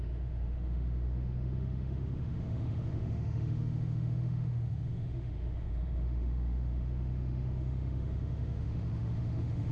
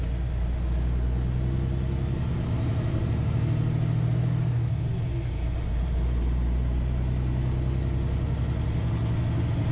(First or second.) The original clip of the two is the second